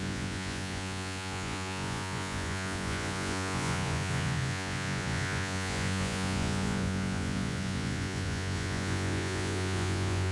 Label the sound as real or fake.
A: fake